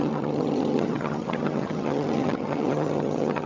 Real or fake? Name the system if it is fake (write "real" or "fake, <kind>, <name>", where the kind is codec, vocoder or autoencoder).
fake, vocoder, HiFi-GAN